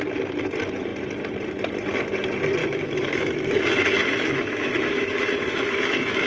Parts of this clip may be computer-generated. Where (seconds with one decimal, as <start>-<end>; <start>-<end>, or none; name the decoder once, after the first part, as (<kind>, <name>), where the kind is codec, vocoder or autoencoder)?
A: 2.6-6.3 (autoencoder, DAC-VAE)